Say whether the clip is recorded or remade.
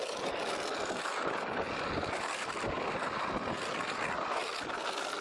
recorded